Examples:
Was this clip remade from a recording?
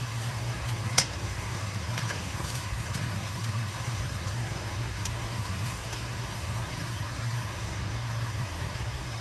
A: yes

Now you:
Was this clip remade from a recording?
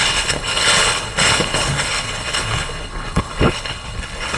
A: yes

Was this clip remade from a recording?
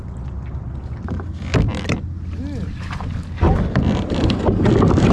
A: no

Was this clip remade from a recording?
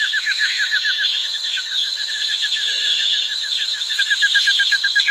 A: yes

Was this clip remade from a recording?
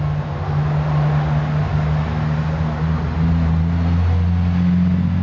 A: no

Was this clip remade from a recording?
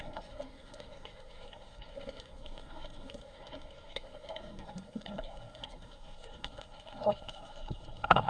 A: yes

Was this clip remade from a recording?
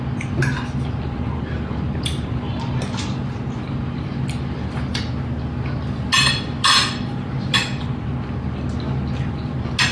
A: no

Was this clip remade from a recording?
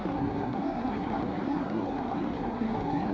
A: yes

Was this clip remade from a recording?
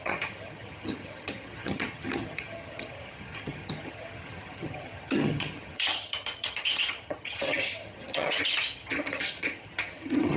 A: yes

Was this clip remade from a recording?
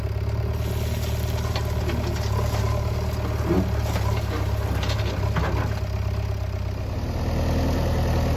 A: no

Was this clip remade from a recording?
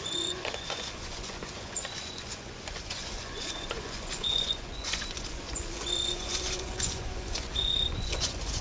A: yes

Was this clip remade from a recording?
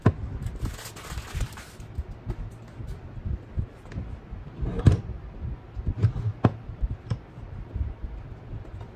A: no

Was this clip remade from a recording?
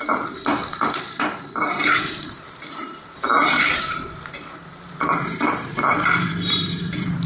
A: yes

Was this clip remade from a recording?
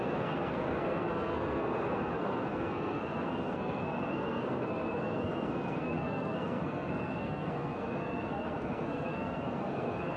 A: yes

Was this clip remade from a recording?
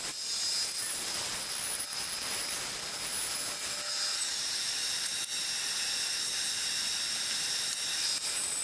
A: no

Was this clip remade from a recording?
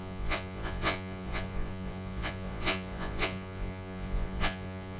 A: yes